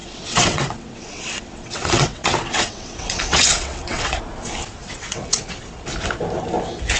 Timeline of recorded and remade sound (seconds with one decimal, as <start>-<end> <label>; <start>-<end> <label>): 0.0-4.2 remade; 4.2-4.8 recorded; 4.8-5.4 remade; 5.4-7.0 recorded